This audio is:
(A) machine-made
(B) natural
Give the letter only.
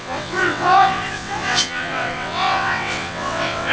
A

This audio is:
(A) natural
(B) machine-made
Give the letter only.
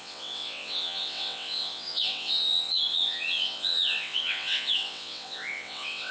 B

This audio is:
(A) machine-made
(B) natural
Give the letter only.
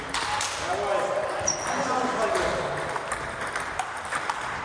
B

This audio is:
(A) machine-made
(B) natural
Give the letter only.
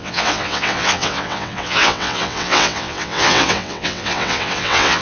A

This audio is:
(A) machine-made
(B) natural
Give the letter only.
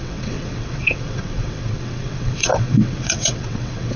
A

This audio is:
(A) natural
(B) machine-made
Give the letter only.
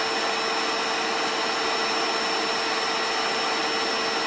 A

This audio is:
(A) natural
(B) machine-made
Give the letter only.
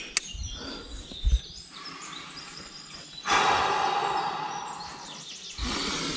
A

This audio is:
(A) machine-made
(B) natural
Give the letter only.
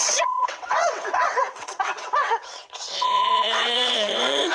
A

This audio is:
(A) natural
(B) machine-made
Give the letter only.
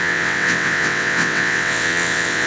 B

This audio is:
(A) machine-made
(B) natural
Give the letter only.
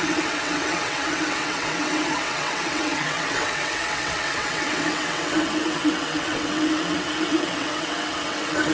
A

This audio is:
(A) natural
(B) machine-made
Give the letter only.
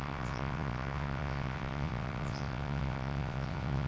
B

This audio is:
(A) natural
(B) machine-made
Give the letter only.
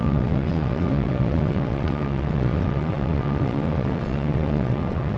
B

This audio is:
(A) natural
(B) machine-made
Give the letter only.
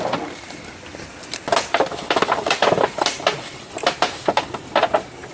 A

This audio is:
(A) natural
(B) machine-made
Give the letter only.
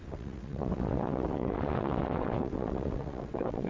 B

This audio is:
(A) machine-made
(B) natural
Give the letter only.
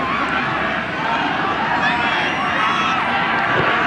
B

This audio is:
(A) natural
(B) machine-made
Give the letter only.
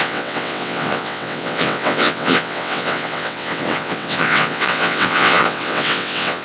B